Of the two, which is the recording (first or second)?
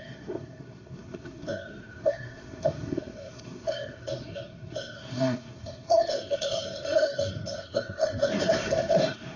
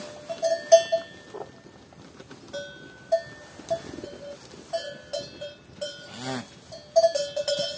second